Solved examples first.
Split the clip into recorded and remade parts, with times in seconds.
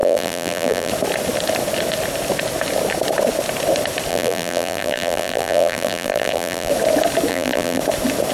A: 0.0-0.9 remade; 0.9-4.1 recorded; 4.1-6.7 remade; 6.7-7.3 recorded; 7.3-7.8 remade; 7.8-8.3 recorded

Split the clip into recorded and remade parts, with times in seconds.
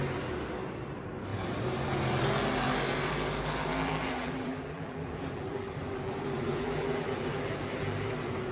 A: 0.0-3.7 recorded; 3.7-8.1 remade; 8.1-8.5 recorded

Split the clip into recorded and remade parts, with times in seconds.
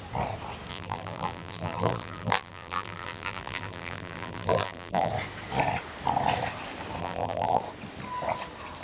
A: 0.0-0.7 recorded; 0.7-5.1 remade; 5.1-7.0 recorded; 7.0-7.6 remade; 7.6-8.8 recorded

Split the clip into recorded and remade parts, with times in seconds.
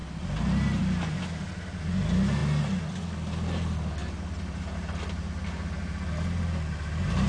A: 0.0-7.3 recorded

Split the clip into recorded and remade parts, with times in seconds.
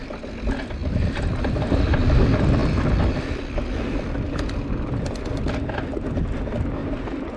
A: 0.0-6.8 recorded; 6.8-7.4 remade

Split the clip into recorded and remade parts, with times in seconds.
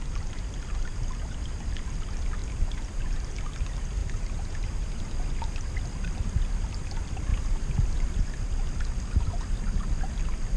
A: 0.0-2.4 recorded; 2.4-3.3 remade; 3.3-4.0 recorded; 4.0-5.0 remade; 5.0-10.6 recorded